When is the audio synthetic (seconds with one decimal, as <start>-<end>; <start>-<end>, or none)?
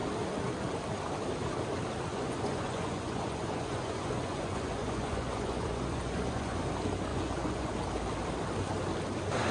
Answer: 2.1-6.6; 7.1-7.7